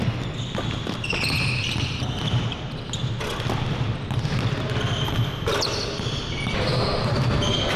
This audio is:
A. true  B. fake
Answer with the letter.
A